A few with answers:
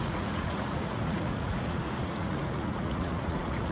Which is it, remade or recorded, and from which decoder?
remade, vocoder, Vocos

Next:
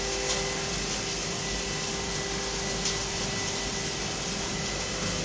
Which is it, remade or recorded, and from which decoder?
recorded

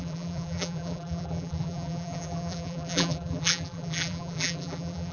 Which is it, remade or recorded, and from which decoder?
remade, vocoder, BigVGAN v2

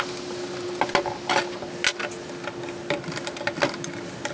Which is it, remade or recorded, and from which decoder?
recorded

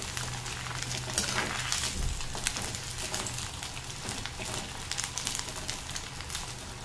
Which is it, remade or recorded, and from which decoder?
recorded